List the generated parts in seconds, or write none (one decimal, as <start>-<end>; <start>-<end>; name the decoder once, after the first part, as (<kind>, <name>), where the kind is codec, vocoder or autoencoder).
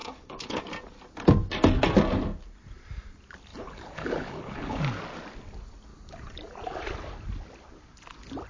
0.0-0.6 (codec, HILCodec); 3.5-4.8